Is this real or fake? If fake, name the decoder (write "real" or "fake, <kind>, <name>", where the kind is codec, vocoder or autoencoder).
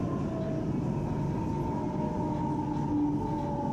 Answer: real